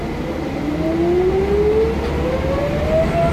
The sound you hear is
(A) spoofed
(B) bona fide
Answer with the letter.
B